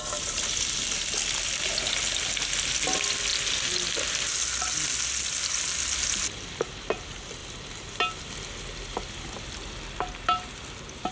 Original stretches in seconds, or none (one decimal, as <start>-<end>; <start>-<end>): 0.0-11.1